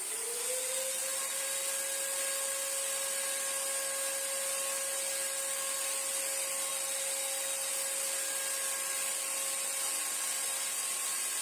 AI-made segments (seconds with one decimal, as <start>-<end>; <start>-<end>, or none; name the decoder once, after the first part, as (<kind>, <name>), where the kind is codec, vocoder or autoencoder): none